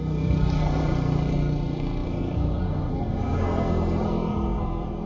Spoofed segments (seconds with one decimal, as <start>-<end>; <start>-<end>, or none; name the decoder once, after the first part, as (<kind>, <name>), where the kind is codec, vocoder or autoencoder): 0.0-5.1 (codec, SNAC)